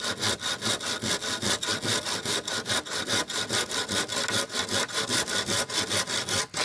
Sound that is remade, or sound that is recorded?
recorded